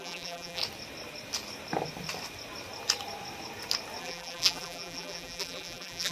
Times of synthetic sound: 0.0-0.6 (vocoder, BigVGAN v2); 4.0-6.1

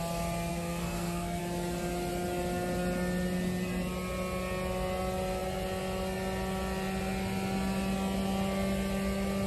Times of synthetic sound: 0.5-1.4 (codec, SNAC)

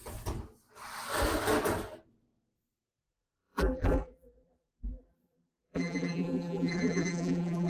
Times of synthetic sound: 3.0-7.7 (vocoder, BigVGAN v2)

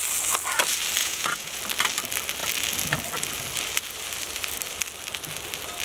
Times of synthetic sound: 1.0-1.6 (vocoder, Vocos)

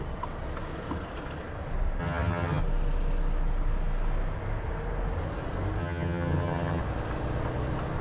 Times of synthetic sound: 2.0-2.6 (vocoder, HiFi-GAN); 5.8-6.8

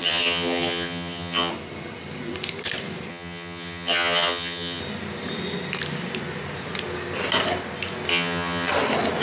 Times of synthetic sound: 0.0-1.5 (vocoder, HiFi-GAN); 3.1-4.8; 8.1-8.7

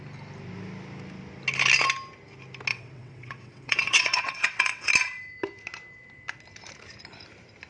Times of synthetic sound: 2.7-4.9 (vocoder, WaveNeXt)

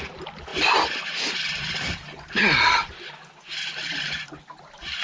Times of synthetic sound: none